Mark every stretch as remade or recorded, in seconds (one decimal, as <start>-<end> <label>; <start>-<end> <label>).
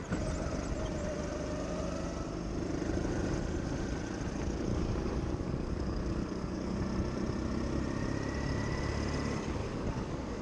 0.0-4.7 recorded; 4.7-6.8 remade; 6.8-9.6 recorded; 9.6-10.4 remade